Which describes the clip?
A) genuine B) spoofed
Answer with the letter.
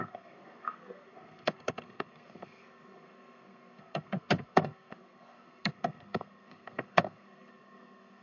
B